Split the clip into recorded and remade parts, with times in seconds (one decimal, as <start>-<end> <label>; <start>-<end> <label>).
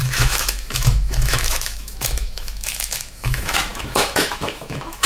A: 0.0-5.1 remade